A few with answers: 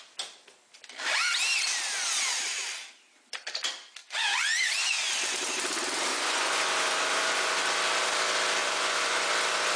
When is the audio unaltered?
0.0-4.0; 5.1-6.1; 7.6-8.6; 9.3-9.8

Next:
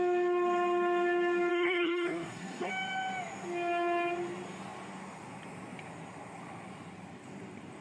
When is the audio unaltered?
0.0-1.5; 2.7-7.8

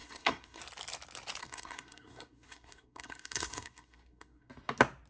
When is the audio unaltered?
0.6-1.4; 4.5-5.1

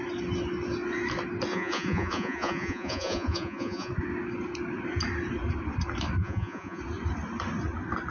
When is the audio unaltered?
0.0-1.5; 3.9-6.2; 6.8-8.1

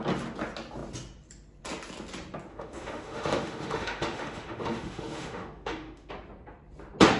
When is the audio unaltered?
0.0-2.5; 6.1-7.2

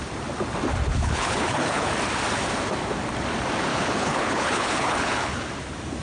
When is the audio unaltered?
0.0-0.9; 1.9-3.7; 5.5-6.0

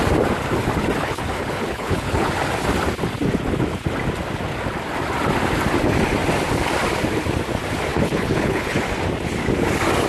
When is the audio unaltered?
0.0-1.0; 2.3-7.9; 8.8-10.1

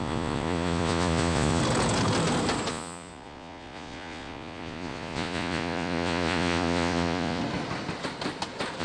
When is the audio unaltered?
1.6-2.7; 7.4-8.8